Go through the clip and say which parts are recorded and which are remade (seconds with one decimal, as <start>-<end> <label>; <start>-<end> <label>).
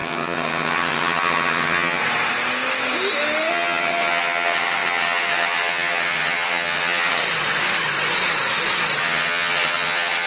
0.0-2.0 remade; 2.0-3.5 recorded; 3.5-7.2 remade; 7.2-9.0 recorded; 9.0-10.3 remade